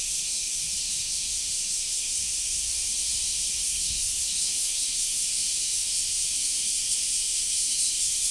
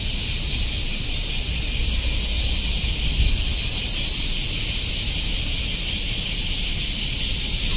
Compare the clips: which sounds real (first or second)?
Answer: second